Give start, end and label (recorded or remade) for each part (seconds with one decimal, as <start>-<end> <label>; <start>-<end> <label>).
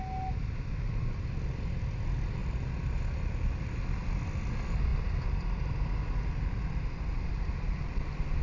0.0-8.4 recorded